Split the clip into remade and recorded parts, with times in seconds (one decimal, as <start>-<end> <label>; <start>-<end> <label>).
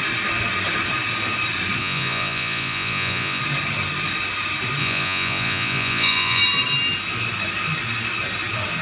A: 0.0-1.8 recorded; 1.8-3.4 remade; 3.4-4.8 recorded; 4.8-6.4 remade; 6.4-8.8 recorded